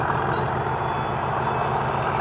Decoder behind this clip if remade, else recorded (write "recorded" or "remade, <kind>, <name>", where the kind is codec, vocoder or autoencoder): recorded